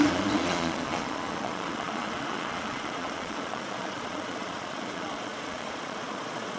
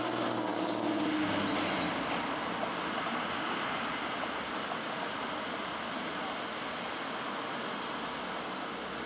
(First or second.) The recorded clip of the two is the second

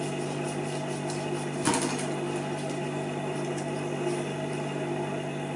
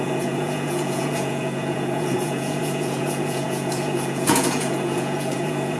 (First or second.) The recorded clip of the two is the first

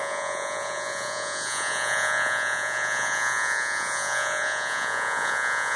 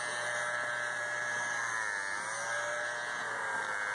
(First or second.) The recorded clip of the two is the second